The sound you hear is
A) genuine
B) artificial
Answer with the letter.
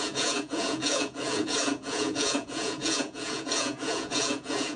B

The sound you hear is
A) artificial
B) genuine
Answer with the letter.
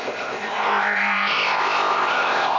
A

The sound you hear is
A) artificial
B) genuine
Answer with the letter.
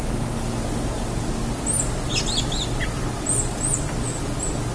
B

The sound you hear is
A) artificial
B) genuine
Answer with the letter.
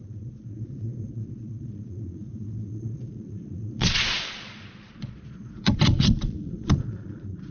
A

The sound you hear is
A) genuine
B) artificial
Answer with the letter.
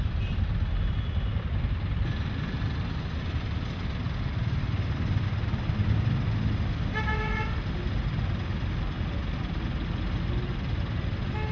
A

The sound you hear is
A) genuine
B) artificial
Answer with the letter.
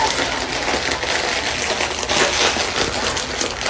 A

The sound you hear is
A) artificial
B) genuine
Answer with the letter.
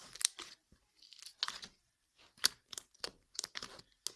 B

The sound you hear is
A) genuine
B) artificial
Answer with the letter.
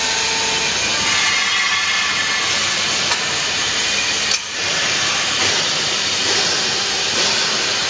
A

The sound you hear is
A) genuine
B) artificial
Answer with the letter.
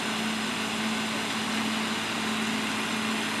A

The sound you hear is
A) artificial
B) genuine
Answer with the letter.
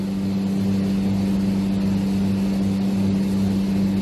B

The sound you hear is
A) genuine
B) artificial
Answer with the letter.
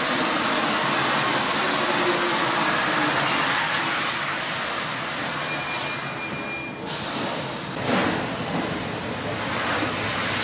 A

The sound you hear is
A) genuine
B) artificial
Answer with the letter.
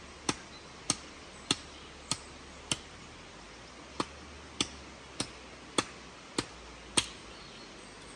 A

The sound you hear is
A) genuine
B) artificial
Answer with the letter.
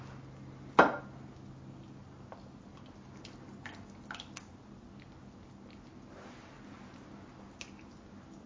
A